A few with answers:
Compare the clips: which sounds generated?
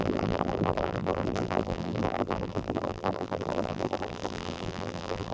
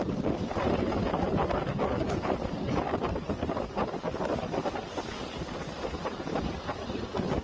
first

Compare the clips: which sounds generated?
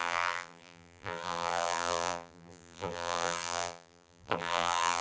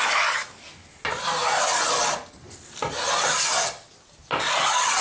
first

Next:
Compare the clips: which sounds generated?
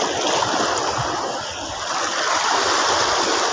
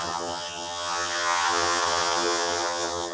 second